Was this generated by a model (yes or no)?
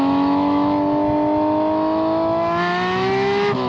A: yes